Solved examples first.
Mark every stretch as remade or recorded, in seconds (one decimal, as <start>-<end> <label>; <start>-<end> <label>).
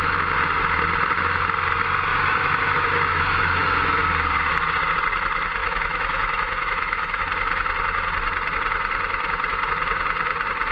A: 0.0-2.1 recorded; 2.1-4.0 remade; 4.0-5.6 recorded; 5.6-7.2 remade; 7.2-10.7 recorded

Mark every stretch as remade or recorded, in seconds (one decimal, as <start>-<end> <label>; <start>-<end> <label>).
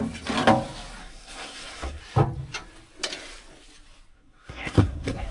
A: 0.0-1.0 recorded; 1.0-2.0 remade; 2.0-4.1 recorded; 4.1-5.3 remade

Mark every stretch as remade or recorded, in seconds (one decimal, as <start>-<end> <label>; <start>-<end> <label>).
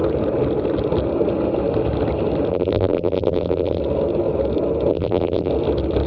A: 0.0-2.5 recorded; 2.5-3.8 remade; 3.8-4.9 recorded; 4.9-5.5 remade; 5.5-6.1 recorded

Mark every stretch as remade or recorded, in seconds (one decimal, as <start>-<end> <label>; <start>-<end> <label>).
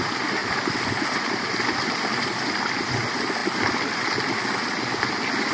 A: 0.0-0.4 recorded; 0.4-2.5 remade; 2.5-5.5 recorded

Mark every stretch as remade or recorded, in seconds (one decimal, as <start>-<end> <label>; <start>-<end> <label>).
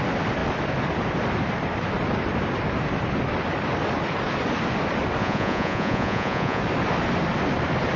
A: 0.0-5.2 recorded; 5.2-6.6 remade; 6.6-8.0 recorded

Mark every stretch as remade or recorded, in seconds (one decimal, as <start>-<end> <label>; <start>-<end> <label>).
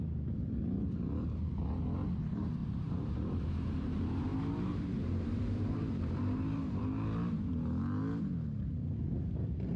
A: 0.0-2.6 recorded; 2.6-3.5 remade; 3.5-4.3 recorded; 4.3-6.8 remade; 6.8-9.1 recorded; 9.1-9.8 remade